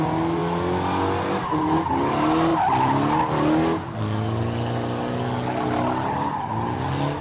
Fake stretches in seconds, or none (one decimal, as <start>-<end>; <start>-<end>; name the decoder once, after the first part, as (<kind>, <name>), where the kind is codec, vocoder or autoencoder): none